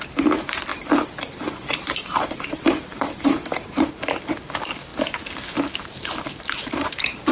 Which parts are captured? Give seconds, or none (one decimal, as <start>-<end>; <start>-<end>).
4.9-5.7